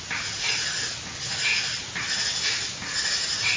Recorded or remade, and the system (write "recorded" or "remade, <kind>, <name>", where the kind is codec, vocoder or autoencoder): recorded